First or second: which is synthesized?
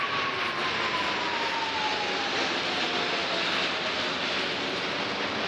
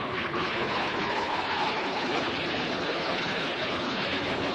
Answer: second